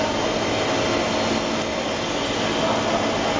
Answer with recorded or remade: recorded